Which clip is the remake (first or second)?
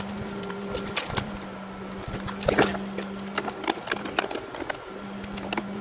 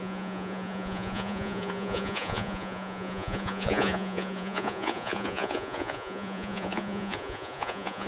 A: second